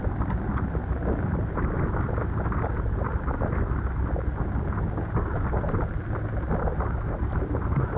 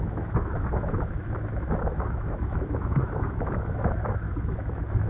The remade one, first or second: second